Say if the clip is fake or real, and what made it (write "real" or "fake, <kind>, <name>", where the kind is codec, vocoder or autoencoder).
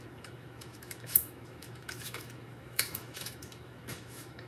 fake, autoencoder, DAC-VAE